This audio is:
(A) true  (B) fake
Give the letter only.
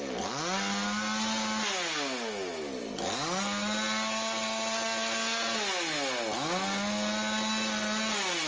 A